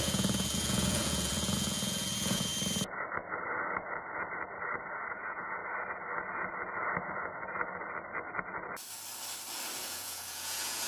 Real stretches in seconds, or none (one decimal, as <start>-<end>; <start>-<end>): 2.5-5.1; 5.6-9.8